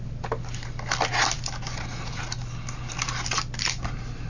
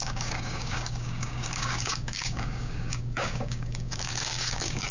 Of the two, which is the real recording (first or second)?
first